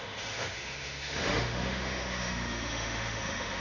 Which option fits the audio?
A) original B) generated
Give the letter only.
B